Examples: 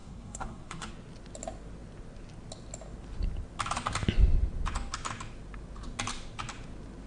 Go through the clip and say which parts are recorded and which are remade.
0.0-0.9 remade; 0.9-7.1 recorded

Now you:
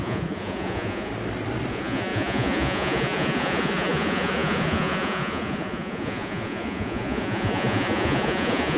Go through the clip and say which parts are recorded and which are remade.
0.0-1.1 remade; 1.1-1.7 recorded; 1.7-8.8 remade